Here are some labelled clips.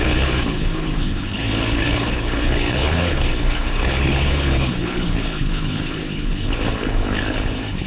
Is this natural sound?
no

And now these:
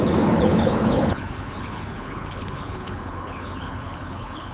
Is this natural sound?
no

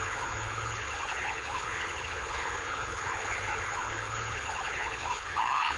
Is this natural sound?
no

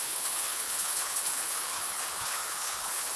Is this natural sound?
no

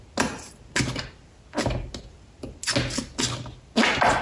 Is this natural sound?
yes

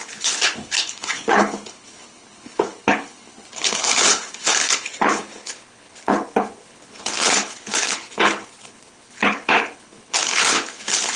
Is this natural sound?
no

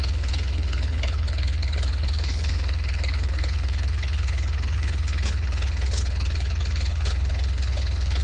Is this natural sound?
no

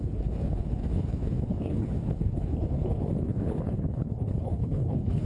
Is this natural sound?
no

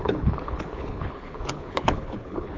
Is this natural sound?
no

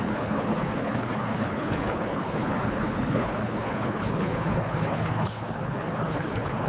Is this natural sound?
no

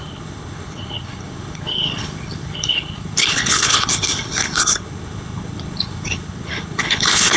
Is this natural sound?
no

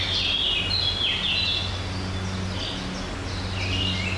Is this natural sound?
yes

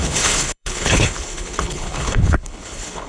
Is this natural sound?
no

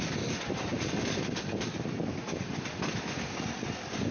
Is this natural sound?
yes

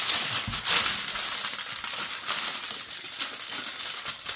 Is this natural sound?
yes